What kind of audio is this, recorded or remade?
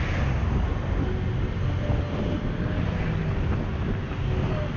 recorded